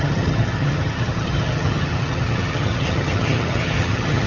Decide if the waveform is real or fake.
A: fake